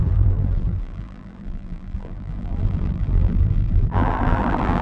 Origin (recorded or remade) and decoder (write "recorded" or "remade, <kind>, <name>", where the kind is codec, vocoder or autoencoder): remade, vocoder, BigVGAN v2